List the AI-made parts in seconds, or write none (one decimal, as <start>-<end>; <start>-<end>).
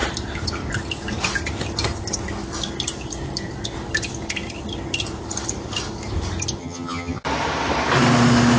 6.6-7.2